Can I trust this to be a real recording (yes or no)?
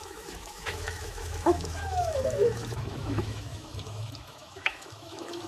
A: no